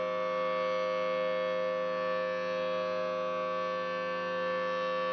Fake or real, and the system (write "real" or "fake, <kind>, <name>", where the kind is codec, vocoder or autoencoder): real